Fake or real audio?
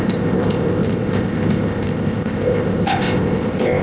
fake